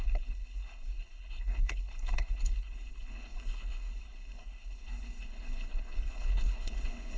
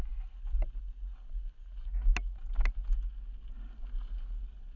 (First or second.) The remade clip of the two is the first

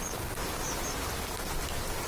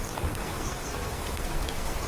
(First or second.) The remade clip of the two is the second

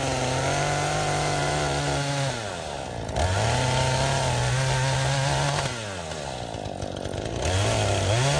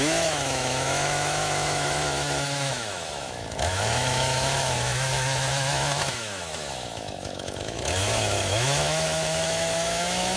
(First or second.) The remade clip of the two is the second